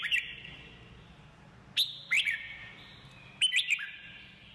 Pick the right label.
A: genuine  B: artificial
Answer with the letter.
A